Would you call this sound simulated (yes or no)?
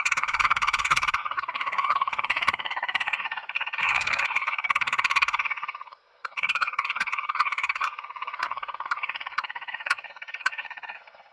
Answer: yes